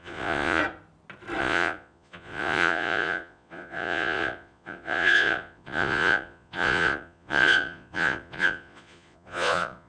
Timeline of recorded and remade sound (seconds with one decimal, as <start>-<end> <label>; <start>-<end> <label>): 0.0-0.6 remade; 0.6-1.4 recorded; 1.4-9.9 remade